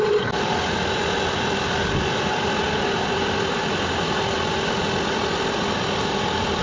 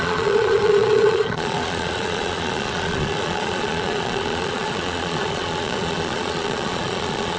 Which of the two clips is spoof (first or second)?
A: second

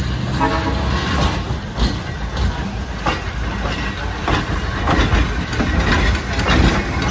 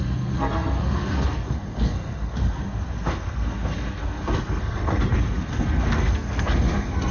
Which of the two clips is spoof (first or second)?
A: second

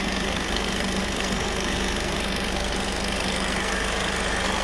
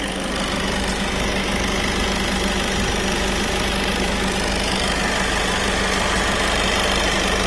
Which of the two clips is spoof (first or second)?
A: first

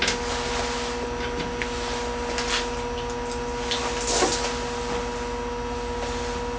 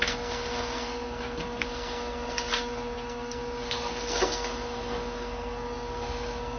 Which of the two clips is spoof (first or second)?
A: second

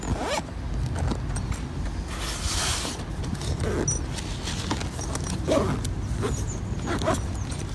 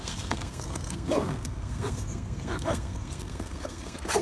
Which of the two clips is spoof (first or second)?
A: second